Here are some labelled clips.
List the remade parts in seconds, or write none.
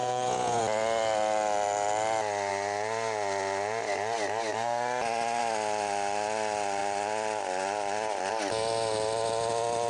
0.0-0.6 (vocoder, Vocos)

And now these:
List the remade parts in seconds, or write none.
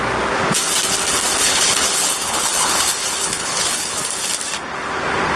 1.4-4.0 (codec, HILCodec)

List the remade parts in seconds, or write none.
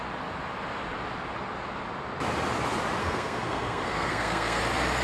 3.0-4.6 (codec, SNAC)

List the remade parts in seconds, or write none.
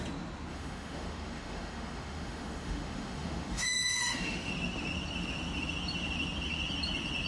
0.5-4.5 (autoencoder, DAC-VAE)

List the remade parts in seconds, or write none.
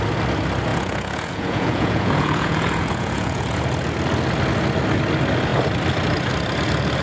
0.7-3.6 (vocoder, Vocos)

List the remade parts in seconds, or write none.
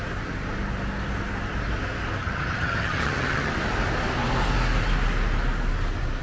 2.2-3.5 (vocoder, HiFi-GAN)